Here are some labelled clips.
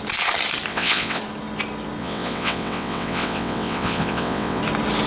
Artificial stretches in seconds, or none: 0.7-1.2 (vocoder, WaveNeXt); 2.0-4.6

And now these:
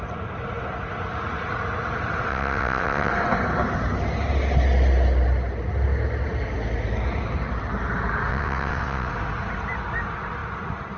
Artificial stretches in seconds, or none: 2.3-3.1 (vocoder, WaveNeXt); 8.3-9.1

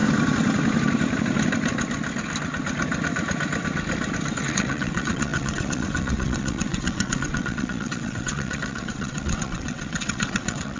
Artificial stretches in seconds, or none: 4.4-10.8 (vocoder, WaveNeXt)

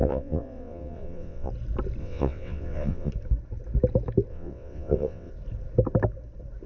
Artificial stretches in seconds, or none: 0.0-1.5 (vocoder, WaveNeXt); 2.0-3.1; 4.3-5.3

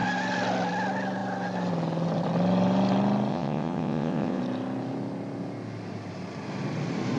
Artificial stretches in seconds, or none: 3.3-4.4 (vocoder, WaveNeXt)

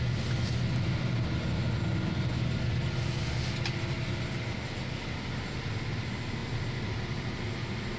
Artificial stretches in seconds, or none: none